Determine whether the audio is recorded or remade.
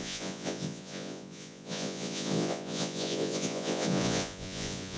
remade